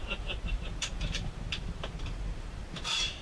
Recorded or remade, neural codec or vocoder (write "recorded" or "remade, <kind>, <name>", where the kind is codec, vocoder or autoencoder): remade, vocoder, BigVGAN v2